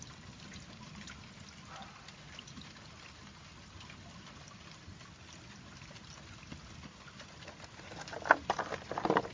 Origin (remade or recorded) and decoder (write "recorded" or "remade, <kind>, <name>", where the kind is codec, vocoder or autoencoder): recorded